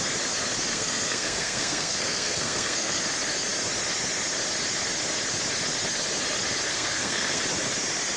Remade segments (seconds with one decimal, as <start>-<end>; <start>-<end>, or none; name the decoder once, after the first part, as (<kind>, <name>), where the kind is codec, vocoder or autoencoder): 0.7-3.0 (codec, SNAC); 6.7-7.4